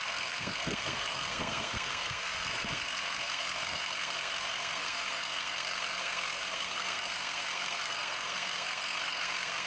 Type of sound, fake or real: fake